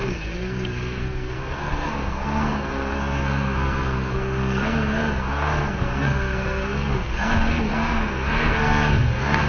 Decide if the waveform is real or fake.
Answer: fake